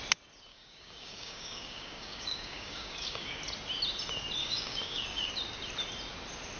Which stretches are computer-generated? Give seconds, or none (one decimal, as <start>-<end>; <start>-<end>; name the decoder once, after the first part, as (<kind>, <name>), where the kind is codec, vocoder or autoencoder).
0.5-3.4 (codec, DAC); 4.4-5.3